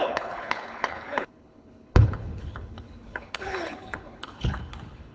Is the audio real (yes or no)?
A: no